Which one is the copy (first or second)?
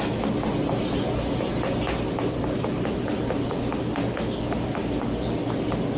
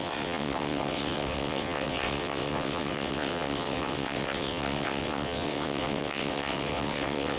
second